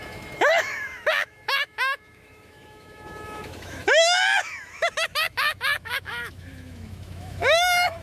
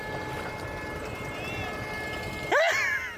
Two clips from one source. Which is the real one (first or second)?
second